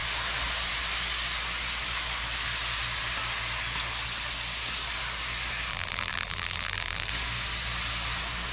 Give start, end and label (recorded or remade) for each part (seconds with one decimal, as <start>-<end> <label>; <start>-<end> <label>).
0.0-5.7 recorded; 5.7-7.1 remade; 7.1-8.5 recorded